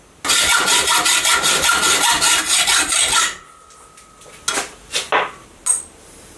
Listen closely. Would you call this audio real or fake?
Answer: real